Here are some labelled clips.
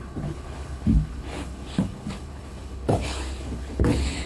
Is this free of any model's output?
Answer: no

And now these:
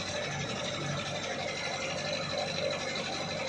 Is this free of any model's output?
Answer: yes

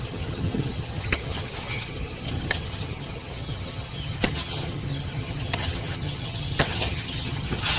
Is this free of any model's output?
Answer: no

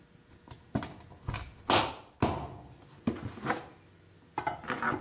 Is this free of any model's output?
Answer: yes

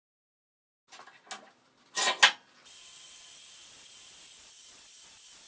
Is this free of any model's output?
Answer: yes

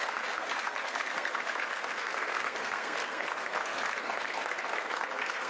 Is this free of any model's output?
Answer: no